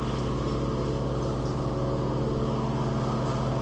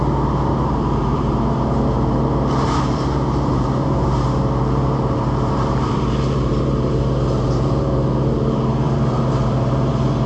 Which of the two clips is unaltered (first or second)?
first